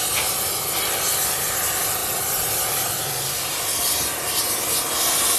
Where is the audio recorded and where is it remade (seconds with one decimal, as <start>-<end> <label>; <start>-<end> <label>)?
0.0-5.4 recorded